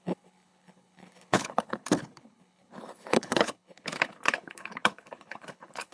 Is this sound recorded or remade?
remade